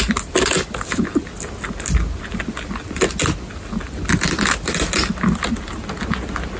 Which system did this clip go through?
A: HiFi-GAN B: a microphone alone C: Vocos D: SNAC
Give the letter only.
B